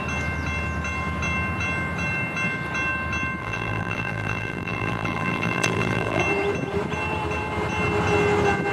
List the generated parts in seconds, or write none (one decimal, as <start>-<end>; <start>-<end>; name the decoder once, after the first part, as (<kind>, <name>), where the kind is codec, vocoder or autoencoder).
3.4-6.2 (vocoder, BigVGAN v2)